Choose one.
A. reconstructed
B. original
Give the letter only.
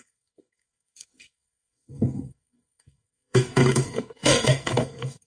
A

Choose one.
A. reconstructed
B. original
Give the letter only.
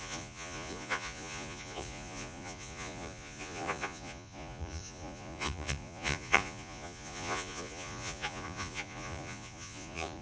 A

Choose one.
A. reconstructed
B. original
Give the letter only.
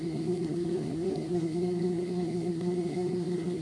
A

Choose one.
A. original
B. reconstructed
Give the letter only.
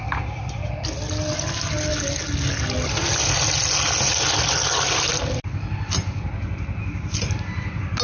A